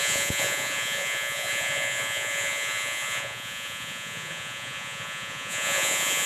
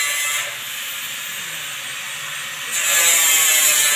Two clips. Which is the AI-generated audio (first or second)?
first